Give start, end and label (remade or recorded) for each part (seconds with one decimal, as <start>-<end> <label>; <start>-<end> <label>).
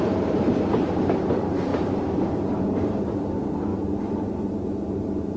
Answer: 0.0-5.4 remade